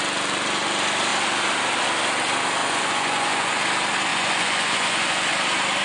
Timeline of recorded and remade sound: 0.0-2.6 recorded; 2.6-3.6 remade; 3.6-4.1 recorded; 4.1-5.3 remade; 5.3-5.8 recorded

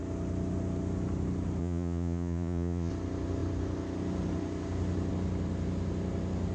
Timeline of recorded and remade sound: 0.0-1.6 recorded; 1.6-2.9 remade; 2.9-6.5 recorded